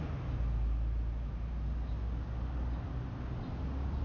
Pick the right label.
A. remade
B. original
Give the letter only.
B